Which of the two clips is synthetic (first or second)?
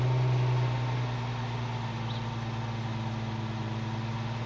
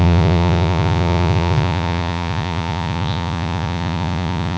second